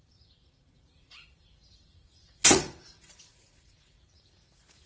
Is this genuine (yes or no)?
no